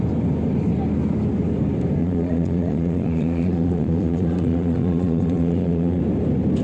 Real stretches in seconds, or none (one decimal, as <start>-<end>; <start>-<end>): 0.0-2.0; 6.0-6.6